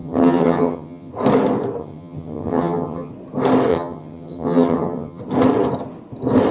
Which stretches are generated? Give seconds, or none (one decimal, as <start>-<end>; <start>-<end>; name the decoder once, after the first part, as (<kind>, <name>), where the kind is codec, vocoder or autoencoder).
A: 0.0-1.1 (vocoder, HiFi-GAN); 1.8-3.1; 3.7-5.2